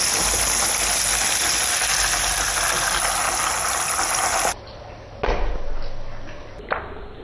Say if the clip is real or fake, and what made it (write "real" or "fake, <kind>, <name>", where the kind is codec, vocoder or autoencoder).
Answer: real